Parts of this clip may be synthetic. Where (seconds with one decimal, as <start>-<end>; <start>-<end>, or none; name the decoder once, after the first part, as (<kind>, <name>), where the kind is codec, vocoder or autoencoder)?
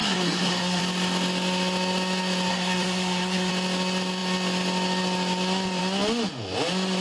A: 0.0-0.8 (codec, SNAC); 2.5-3.5